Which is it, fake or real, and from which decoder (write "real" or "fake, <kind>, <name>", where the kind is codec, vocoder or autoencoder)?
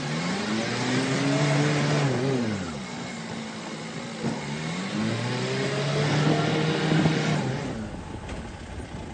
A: real